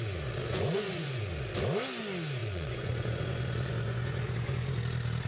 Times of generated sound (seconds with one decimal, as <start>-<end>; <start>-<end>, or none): 0.4-1.2; 2.4-4.8